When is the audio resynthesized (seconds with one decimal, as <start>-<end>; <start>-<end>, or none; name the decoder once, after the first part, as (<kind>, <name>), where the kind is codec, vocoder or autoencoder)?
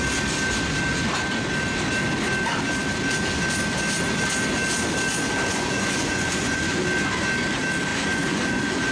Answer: 5.5-6.8 (vocoder, Vocos); 7.9-8.9